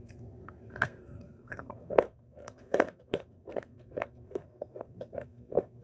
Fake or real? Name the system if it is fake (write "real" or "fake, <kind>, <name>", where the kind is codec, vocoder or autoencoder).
fake, codec, SNAC